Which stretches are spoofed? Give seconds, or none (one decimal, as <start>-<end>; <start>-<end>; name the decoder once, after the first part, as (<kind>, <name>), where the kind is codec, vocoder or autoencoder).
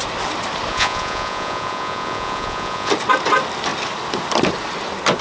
0.7-2.9 (vocoder, Vocos)